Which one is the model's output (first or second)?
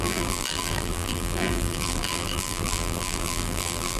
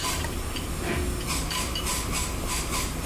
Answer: first